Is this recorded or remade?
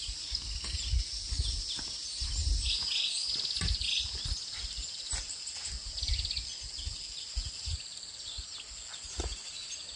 recorded